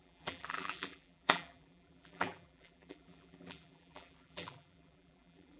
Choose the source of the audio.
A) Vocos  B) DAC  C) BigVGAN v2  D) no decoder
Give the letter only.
C